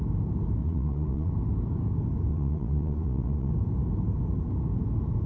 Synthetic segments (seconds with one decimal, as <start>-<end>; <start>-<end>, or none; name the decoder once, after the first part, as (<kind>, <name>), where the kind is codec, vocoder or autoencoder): 0.6-1.3 (vocoder, Vocos); 2.3-3.5